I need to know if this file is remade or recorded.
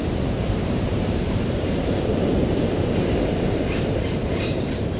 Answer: remade